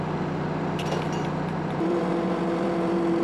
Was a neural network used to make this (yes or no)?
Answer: yes